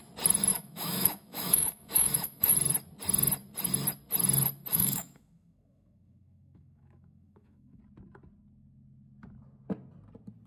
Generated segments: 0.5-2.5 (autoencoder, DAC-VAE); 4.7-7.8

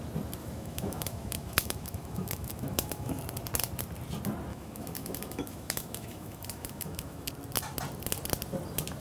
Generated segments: 0.4-3.2 (autoencoder, DAC-VAE); 4.5-7.3

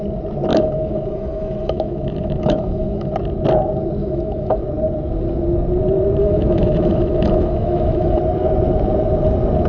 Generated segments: 0.5-3.1 (autoencoder, DAC-VAE); 4.0-4.6; 6.2-8.2

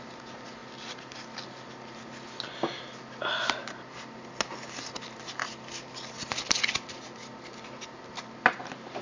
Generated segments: none